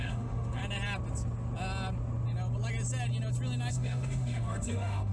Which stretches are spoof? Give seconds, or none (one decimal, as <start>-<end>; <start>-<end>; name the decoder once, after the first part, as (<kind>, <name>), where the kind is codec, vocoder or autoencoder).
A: 0.0-0.6 (autoencoder, DAC-VAE); 3.7-5.1